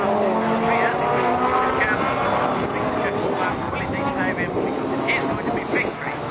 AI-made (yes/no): no